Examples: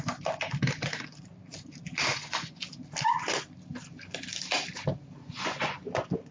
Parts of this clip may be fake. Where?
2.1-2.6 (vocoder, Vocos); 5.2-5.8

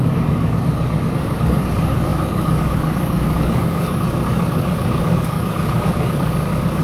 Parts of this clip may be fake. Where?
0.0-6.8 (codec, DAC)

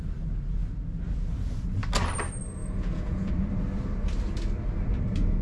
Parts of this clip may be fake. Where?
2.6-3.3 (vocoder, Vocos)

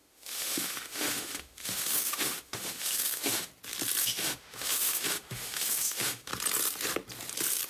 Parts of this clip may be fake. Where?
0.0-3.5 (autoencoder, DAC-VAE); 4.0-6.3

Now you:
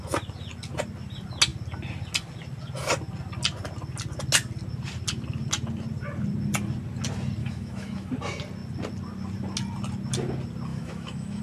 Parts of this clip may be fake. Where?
7.4-8.1 (autoencoder, DAC-VAE); 10.7-11.4

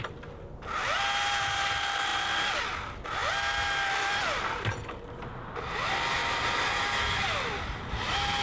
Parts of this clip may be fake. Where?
none

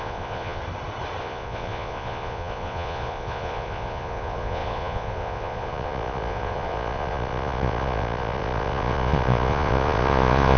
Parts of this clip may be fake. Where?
0.0-0.6 (vocoder, Vocos); 1.2-10.6

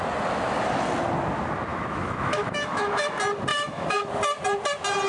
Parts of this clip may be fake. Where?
1.7-3.1 (autoencoder, DAC-VAE); 3.5-4.1